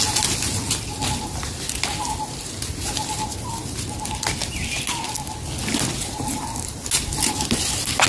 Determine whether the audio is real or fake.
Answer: real